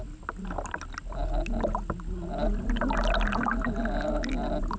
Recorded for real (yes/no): yes